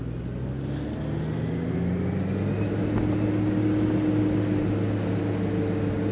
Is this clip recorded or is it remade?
recorded